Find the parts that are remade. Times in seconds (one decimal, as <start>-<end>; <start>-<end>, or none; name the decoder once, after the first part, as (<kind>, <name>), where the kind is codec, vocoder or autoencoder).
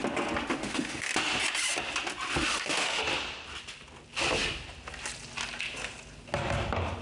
0.4-1.1 (autoencoder, DAC-VAE); 2.4-3.0